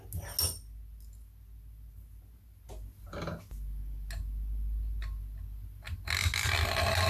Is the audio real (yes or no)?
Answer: yes